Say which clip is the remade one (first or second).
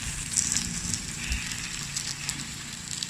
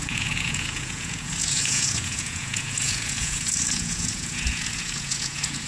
second